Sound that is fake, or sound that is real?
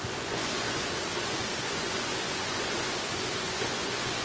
fake